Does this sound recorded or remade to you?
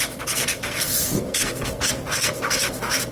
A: remade